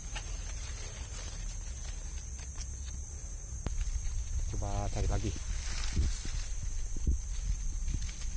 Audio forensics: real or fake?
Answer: real